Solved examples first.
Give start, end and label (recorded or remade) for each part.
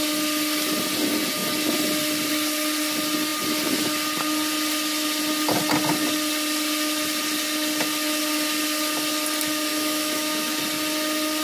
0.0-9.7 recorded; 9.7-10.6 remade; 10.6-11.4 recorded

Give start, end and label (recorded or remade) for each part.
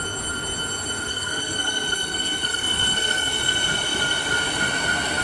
0.0-1.1 recorded; 1.1-3.4 remade; 3.4-5.2 recorded